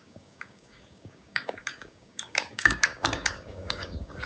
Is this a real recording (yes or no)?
no